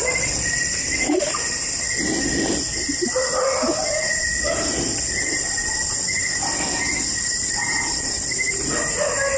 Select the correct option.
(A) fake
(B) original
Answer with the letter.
B